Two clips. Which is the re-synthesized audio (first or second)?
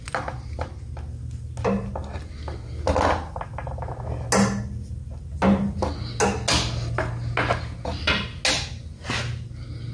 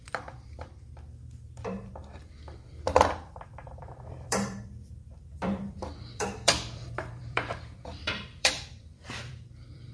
second